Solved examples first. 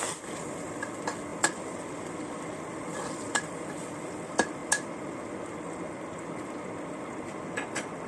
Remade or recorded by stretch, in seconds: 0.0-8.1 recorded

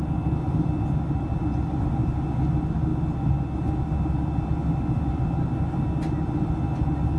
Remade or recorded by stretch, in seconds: 0.0-7.2 recorded

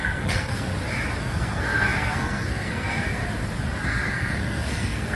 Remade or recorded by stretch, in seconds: 0.0-0.7 remade; 0.7-1.2 recorded; 1.2-3.2 remade; 3.2-3.8 recorded; 3.8-5.2 remade